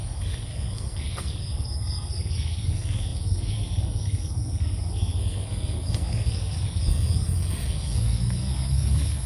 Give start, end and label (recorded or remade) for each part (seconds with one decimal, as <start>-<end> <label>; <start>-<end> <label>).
0.0-9.3 remade